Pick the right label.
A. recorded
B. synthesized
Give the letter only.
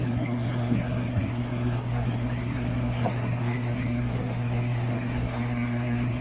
B